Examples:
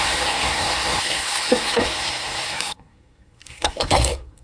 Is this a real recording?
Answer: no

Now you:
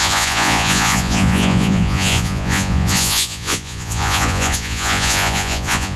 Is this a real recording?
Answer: no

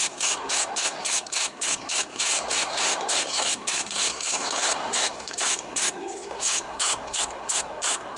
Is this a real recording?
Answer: no